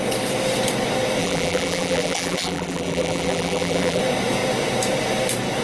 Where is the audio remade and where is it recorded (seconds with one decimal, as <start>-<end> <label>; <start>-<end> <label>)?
0.0-1.2 recorded; 1.2-4.0 remade; 4.0-5.6 recorded